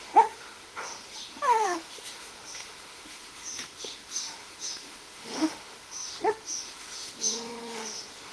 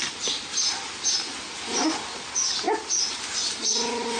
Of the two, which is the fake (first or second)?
first